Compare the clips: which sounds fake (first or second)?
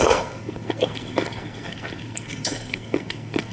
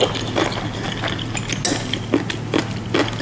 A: first